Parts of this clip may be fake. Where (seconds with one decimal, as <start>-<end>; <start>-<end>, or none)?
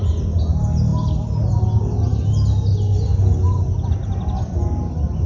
none